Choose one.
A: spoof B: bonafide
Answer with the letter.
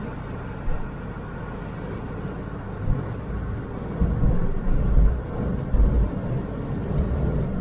B